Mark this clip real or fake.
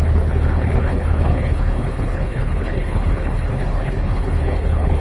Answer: fake